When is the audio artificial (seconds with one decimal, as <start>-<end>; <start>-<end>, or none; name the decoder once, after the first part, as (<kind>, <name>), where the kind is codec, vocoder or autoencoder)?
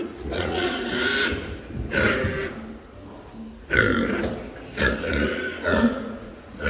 0.0-1.1 (vocoder, Vocos); 4.8-6.7